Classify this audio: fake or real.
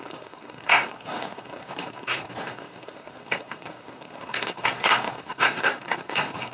fake